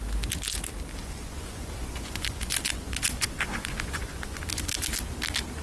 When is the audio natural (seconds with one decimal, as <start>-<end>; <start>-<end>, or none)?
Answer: 0.0-1.0; 4.4-5.6